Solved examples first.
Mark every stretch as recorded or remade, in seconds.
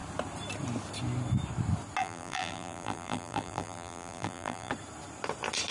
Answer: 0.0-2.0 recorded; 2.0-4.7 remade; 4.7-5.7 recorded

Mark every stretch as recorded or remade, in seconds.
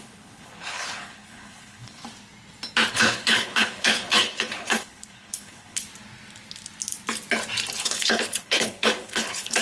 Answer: 0.0-2.0 remade; 2.0-2.9 recorded; 2.9-5.8 remade; 5.8-7.8 recorded; 7.8-9.6 remade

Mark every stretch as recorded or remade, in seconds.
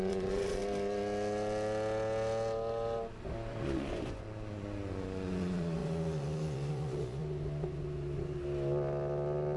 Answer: 0.0-0.6 remade; 0.6-3.5 recorded; 3.5-7.2 remade; 7.2-9.6 recorded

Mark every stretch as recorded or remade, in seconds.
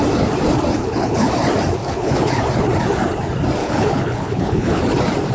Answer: 0.0-0.8 recorded; 0.8-1.3 remade; 1.3-1.8 recorded; 1.8-2.4 remade; 2.4-3.6 recorded; 3.6-4.8 remade; 4.8-5.3 recorded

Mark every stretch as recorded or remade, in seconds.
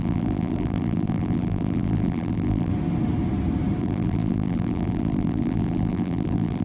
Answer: 0.0-2.7 remade; 2.7-3.8 recorded; 3.8-6.6 remade